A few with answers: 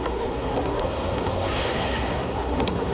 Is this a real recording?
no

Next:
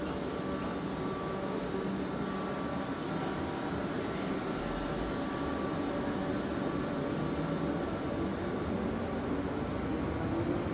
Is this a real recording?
yes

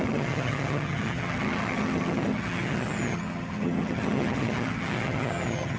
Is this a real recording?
no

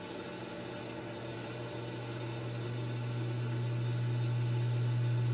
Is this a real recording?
yes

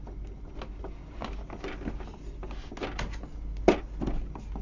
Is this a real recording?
yes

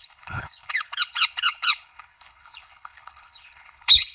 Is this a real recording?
no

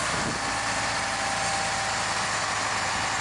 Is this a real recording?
yes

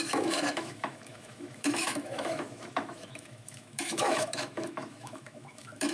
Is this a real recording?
no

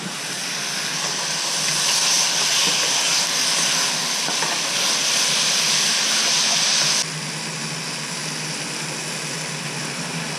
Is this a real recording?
yes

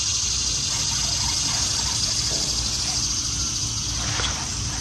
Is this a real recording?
yes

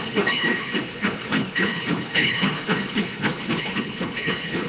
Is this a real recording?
no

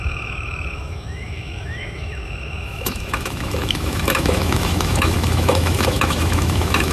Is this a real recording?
no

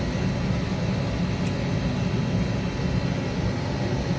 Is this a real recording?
yes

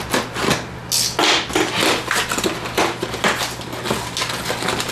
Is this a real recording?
yes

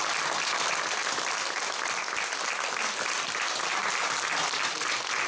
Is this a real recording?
yes